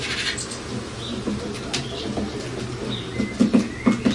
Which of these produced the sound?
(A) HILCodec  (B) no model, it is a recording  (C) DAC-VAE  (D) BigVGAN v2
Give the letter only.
B